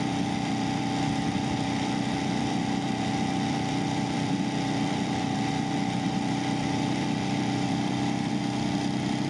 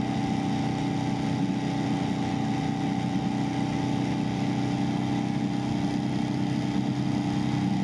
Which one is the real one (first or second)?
second